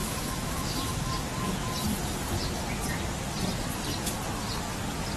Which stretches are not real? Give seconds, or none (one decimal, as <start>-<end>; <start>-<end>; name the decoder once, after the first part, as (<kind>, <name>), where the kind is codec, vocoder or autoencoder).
0.0-1.1 (autoencoder, DAC-VAE)